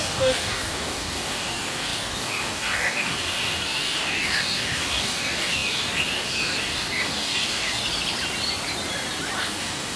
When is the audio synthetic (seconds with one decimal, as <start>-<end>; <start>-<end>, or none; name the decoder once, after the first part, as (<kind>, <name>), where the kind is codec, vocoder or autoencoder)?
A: 0.0-7.8 (codec, DAC); 9.4-10.0